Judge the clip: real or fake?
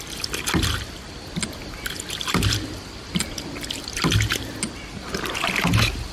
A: real